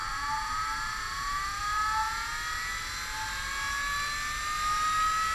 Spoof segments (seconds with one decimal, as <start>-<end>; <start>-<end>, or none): none